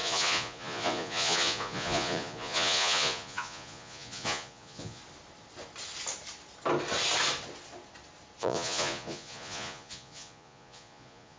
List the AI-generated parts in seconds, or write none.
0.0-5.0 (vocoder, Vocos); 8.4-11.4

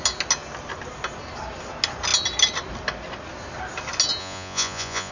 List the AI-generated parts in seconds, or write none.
4.2-5.1 (vocoder, Vocos)

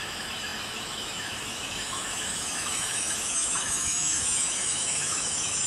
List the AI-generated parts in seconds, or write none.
0.0-5.7 (autoencoder, DAC-VAE)